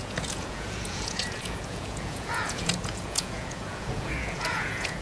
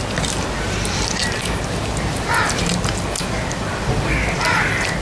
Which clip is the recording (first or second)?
second